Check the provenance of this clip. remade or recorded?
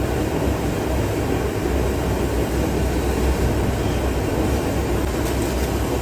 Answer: recorded